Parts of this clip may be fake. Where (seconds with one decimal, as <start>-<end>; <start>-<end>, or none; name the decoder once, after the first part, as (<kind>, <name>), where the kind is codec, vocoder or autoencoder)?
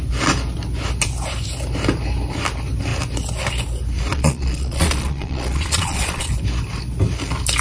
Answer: 4.1-6.3 (vocoder, Vocos)